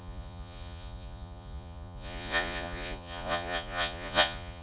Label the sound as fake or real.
fake